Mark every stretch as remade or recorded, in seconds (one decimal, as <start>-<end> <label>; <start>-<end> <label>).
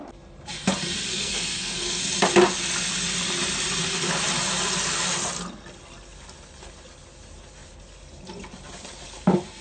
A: 0.0-1.1 recorded; 1.1-2.0 remade; 2.0-9.6 recorded